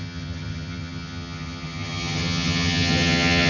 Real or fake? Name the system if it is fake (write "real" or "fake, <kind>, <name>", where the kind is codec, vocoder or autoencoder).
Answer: fake, vocoder, HiFi-GAN